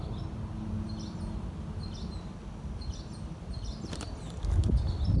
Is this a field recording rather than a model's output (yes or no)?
yes